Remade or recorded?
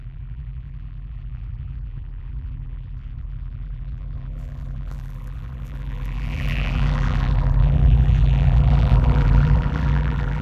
remade